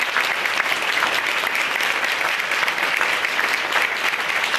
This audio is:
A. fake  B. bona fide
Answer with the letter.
A